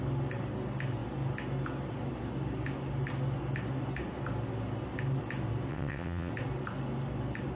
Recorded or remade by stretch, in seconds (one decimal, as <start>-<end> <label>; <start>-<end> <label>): 0.0-5.7 recorded; 5.7-6.3 remade; 6.3-7.5 recorded